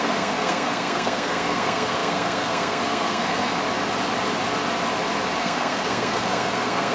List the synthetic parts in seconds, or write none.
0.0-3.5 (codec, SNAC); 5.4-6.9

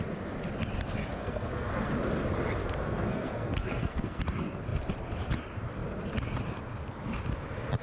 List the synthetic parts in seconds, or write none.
1.2-1.9 (codec, SNAC); 2.6-4.2

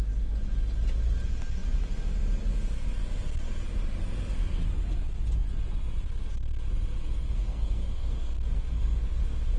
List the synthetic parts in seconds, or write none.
7.2-9.2 (codec, SNAC)

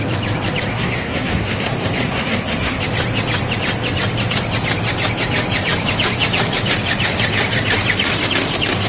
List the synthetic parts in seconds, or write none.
0.7-2.8 (codec, SNAC)

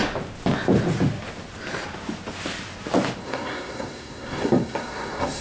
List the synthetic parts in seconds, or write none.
3.2-5.4 (codec, SNAC)